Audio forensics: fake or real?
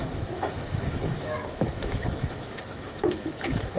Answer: fake